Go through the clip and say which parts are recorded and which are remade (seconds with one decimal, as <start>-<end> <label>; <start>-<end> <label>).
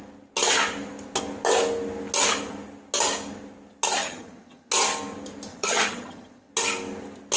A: 0.0-4.0 recorded; 4.0-4.7 remade; 4.7-5.5 recorded; 5.5-6.5 remade; 6.5-7.4 recorded